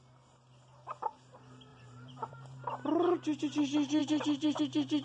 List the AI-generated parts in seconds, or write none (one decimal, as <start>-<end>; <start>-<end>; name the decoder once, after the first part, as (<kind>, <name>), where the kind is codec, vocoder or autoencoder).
1.7-2.7 (vocoder, BigVGAN v2); 4.0-4.6